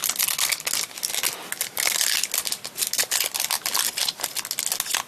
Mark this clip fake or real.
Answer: real